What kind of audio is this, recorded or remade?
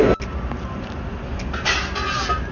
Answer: recorded